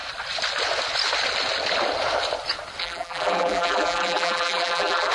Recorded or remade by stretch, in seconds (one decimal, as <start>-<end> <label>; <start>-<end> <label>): 0.0-2.8 recorded; 2.8-5.1 remade